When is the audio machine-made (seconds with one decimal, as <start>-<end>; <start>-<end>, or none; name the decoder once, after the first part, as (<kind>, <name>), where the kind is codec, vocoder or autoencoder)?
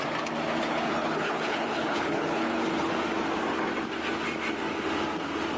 0.7-2.9 (codec, HILCodec)